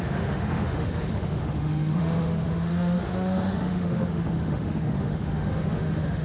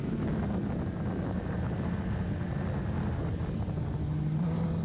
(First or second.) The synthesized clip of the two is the first